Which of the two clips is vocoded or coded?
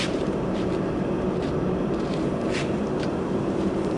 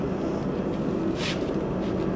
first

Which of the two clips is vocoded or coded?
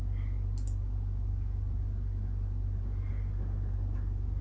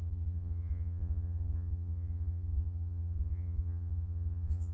second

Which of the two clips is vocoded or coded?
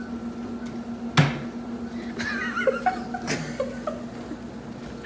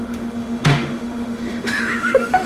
second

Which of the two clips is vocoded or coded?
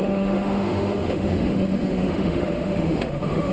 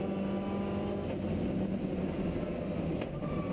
first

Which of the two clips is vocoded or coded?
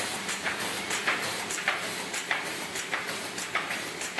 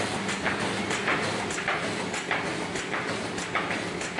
first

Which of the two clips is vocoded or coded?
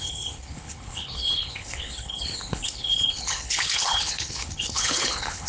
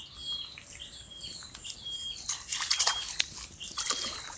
first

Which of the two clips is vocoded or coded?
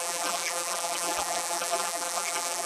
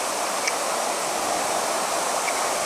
first